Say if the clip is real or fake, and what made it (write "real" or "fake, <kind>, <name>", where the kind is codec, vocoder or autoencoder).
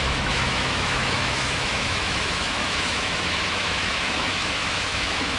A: fake, autoencoder, DAC-VAE